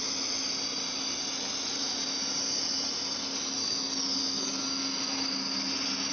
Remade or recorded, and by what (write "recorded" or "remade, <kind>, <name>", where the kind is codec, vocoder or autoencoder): recorded